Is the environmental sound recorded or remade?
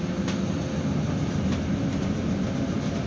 recorded